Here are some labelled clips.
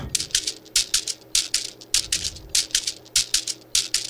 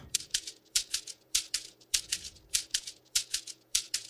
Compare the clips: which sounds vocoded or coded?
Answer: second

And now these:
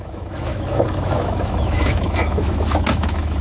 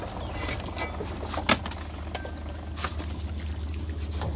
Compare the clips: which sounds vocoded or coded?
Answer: first